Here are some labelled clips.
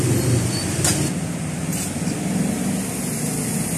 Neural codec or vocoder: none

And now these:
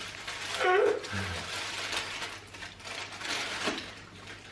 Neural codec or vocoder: none